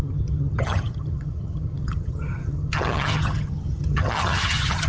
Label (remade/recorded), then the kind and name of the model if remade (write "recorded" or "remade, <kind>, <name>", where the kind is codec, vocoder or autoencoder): remade, vocoder, HiFi-GAN